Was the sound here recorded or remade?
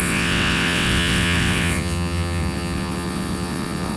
remade